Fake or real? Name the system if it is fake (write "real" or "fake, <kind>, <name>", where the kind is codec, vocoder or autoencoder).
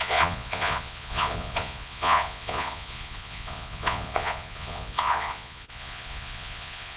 fake, vocoder, Vocos